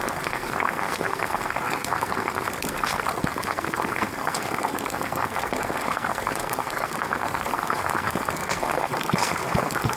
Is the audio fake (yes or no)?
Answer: yes